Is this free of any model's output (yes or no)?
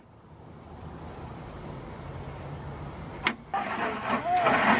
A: yes